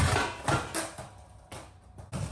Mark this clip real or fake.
real